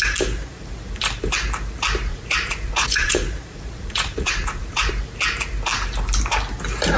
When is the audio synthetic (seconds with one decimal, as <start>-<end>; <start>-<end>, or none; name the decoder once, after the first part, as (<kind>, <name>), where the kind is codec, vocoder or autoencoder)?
2.1-4.9 (vocoder, Vocos)